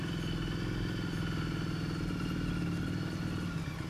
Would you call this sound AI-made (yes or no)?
no